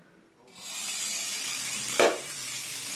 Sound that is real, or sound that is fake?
real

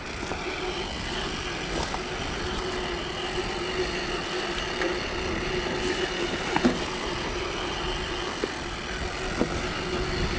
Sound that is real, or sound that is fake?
real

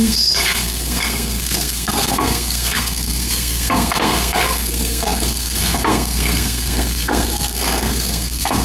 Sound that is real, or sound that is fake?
fake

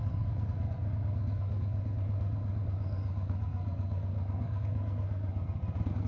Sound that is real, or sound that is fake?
fake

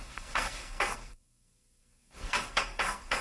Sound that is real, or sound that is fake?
fake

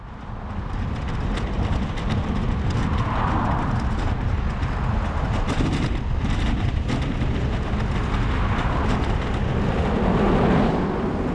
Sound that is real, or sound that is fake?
real